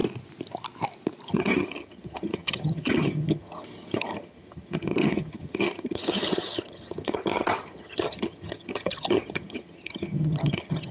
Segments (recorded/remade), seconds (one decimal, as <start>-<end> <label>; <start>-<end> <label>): 0.0-1.3 recorded; 1.3-10.9 remade

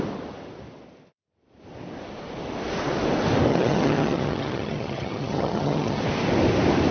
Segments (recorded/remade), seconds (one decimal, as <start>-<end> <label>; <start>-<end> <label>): 0.0-3.5 recorded; 3.5-6.0 remade; 6.0-6.9 recorded

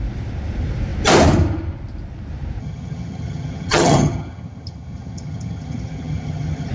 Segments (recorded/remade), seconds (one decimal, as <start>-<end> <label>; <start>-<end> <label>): 0.0-2.6 recorded; 2.6-6.7 remade

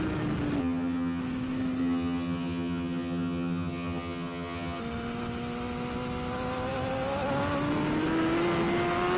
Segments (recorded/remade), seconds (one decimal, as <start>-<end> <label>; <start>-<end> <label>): 0.0-0.6 recorded; 0.6-1.2 remade; 1.2-1.8 recorded; 1.8-4.8 remade; 4.8-9.2 recorded

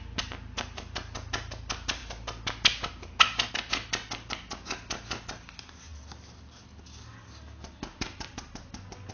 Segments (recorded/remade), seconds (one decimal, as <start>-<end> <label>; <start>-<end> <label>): 0.0-9.1 recorded

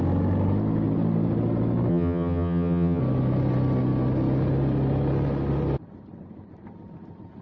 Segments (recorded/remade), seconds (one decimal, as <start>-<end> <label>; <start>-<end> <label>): 0.0-1.9 recorded; 1.9-3.0 remade; 3.0-7.4 recorded

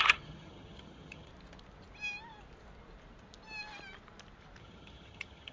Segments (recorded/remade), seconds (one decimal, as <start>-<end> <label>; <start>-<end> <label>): 0.0-1.3 remade; 1.3-4.6 recorded; 4.6-5.5 remade